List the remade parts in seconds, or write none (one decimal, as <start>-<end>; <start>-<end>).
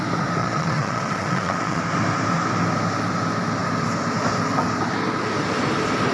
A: 0.4-1.8